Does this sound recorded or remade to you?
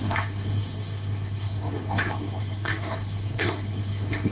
remade